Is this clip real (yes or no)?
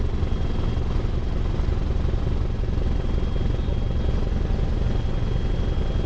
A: yes